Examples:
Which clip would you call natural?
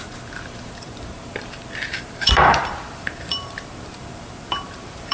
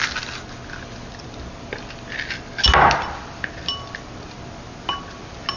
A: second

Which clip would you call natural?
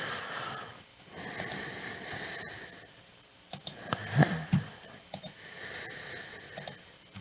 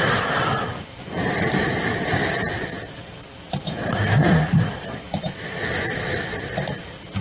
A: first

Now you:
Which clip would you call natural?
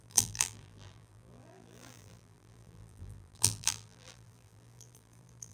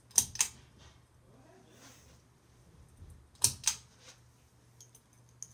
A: second